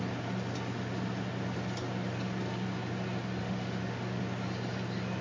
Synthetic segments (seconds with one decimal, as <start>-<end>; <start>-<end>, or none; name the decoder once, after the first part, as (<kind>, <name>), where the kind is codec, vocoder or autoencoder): 3.4-4.2 (autoencoder, DAC-VAE)